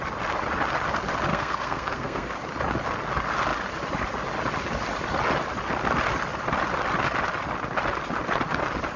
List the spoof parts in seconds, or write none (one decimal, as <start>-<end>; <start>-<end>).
1.3-2.3